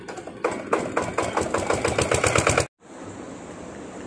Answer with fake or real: real